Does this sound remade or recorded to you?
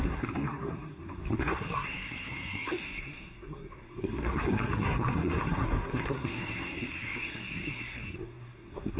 remade